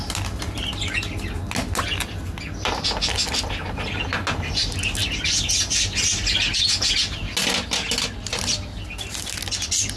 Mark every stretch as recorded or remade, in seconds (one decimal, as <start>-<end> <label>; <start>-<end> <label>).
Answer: 0.0-10.0 recorded